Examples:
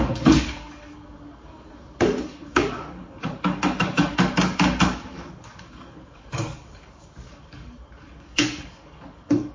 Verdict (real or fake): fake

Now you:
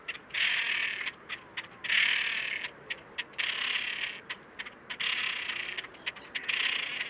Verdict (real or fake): real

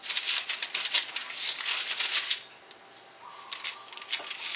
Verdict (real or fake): real